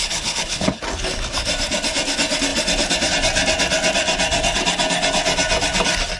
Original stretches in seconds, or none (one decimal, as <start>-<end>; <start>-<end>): 0.8-6.2

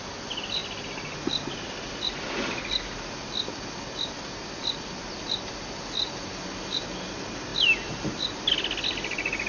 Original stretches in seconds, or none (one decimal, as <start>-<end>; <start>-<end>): 0.0-9.5

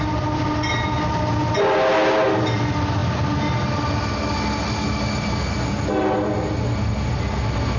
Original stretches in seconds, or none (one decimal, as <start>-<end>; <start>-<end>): 0.0-7.8